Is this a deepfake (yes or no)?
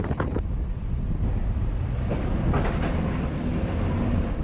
yes